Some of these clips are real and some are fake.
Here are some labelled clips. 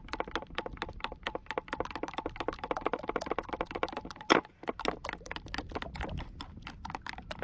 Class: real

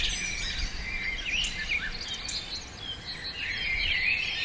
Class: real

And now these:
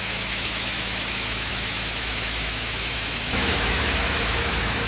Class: fake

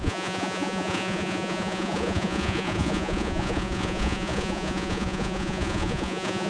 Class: fake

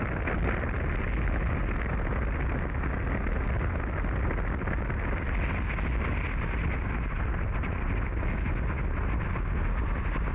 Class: real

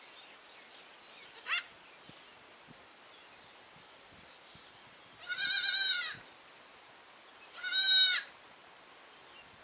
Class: real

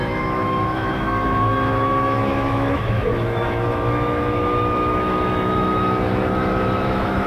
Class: fake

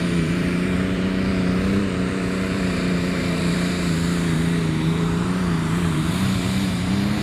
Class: fake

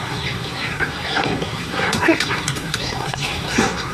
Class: fake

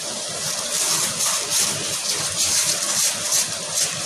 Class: real